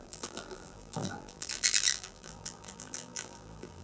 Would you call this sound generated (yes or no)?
yes